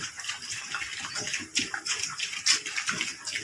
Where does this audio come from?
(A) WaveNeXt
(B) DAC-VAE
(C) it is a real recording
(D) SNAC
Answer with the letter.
C